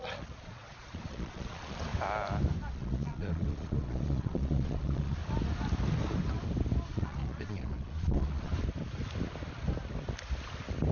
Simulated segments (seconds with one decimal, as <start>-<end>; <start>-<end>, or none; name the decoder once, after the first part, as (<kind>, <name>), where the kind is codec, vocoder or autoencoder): 0.0-1.9 (vocoder, Vocos); 2.7-5.2; 6.9-8.5